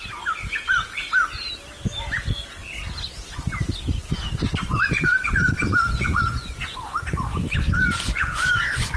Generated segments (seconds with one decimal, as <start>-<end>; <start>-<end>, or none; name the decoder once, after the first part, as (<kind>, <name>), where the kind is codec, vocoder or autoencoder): 4.6-9.0 (vocoder, Vocos)